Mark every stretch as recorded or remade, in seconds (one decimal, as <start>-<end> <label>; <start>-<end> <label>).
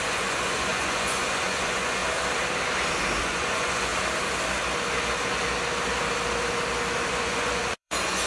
0.0-2.0 remade; 2.0-3.2 recorded; 3.2-3.9 remade; 3.9-7.1 recorded; 7.1-8.3 remade